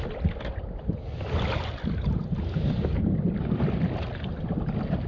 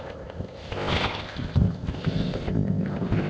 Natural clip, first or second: first